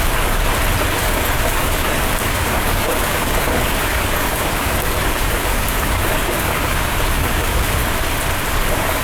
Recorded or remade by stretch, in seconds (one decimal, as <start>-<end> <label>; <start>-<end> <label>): 0.0-0.5 remade; 0.5-1.0 recorded; 1.0-7.8 remade; 7.8-8.5 recorded; 8.5-9.0 remade